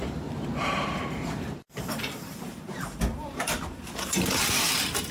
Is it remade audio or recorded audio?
remade